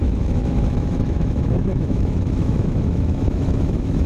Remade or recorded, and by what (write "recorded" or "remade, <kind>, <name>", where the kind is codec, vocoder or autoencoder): remade, autoencoder, DAC-VAE